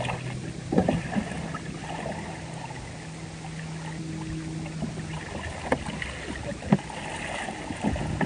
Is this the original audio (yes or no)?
yes